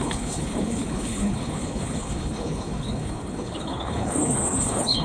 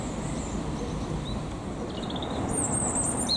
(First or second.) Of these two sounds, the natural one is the second